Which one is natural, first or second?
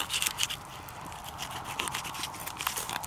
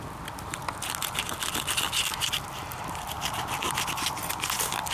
second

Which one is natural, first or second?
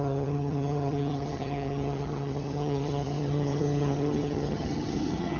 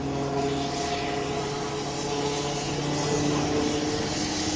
second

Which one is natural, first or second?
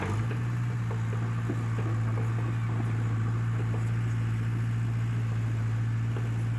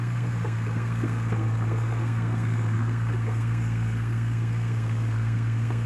first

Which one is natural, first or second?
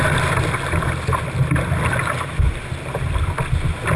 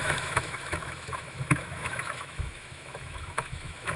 first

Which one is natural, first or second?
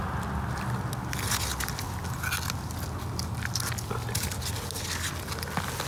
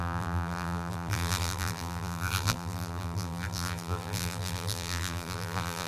first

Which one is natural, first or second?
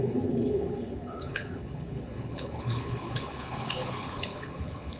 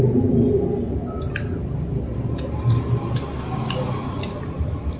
second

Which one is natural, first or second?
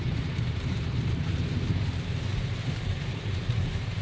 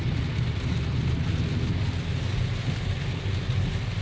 second